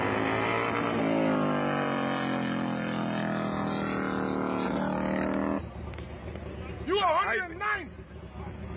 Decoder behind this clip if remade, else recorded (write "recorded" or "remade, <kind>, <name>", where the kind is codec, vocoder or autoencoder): recorded